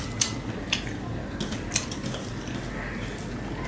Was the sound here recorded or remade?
recorded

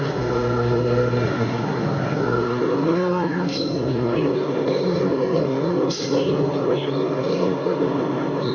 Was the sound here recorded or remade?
remade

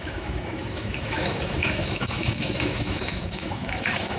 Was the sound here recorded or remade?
remade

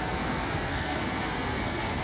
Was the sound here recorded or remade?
remade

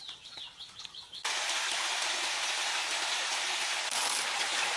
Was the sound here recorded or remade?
recorded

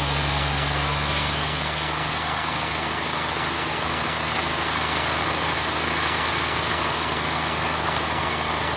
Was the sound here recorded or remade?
remade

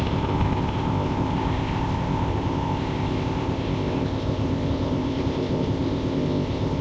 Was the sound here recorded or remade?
remade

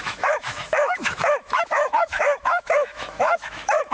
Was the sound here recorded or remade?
remade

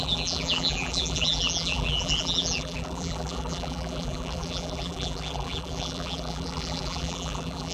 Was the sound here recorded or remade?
remade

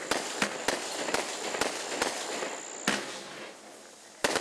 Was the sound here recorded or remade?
recorded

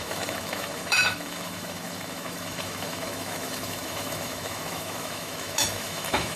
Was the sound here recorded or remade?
remade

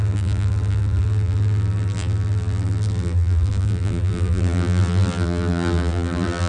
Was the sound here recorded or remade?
remade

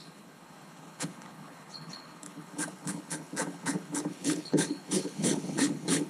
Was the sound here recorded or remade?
remade